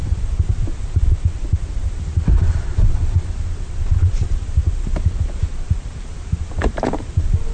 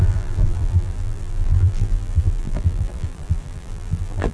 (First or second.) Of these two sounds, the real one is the first